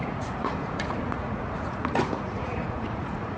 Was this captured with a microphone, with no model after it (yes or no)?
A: no